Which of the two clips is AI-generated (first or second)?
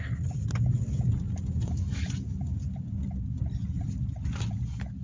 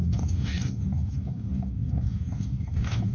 second